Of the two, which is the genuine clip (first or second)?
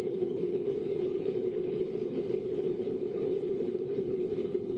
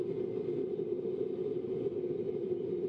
second